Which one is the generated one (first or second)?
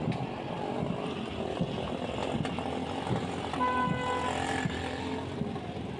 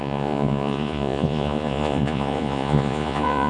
second